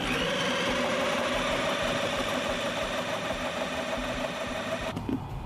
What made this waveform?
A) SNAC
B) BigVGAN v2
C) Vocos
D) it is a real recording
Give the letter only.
D